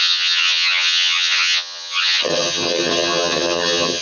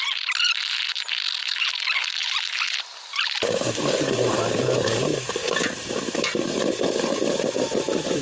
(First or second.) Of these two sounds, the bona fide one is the second